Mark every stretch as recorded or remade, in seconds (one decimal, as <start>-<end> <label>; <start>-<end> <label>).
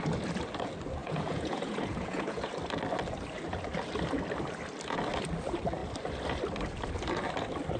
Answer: 0.0-1.0 recorded; 1.0-2.5 remade; 2.5-7.8 recorded